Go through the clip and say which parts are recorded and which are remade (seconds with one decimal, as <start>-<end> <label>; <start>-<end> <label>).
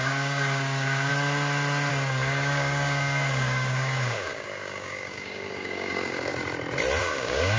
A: 0.0-1.1 remade; 1.1-1.9 recorded; 1.9-6.3 remade; 6.3-7.0 recorded; 7.0-7.6 remade